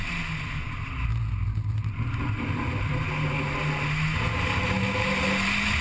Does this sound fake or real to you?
real